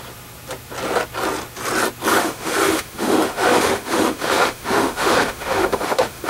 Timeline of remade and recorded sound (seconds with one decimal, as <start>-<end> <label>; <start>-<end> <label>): 0.0-2.1 recorded; 2.1-6.3 remade